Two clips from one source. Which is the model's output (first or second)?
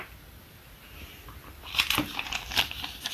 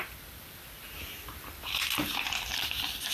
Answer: second